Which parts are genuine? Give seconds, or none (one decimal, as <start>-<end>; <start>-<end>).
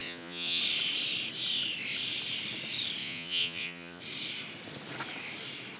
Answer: 0.6-3.0; 4.0-5.8